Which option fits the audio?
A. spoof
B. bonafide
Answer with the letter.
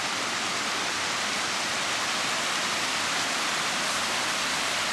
B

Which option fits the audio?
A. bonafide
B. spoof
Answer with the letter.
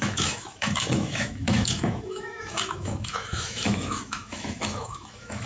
B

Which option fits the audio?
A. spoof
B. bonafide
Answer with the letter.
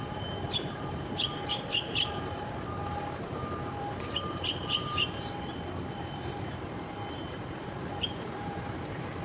A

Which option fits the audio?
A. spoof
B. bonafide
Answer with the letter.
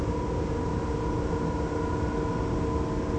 B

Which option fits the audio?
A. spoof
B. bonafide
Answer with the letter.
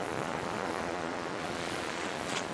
A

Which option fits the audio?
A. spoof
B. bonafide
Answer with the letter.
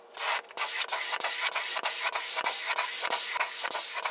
B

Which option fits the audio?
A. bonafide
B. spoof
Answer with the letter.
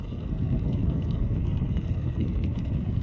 B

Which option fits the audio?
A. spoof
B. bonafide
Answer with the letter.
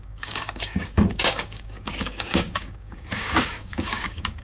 A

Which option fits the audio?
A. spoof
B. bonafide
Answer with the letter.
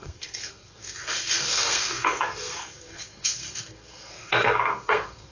A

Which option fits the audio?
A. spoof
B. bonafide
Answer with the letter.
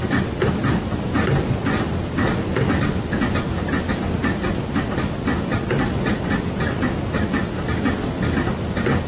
B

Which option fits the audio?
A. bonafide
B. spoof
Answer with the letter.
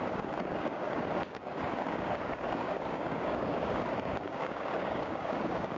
B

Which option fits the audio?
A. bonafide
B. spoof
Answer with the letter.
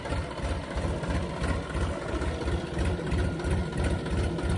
A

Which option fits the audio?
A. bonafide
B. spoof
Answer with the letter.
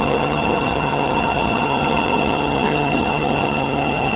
B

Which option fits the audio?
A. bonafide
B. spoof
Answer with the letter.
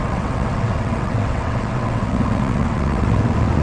B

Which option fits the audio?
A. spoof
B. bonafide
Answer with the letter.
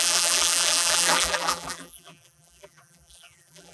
A